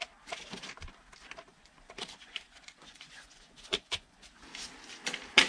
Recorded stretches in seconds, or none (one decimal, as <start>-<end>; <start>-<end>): 0.0-1.5; 4.3-5.5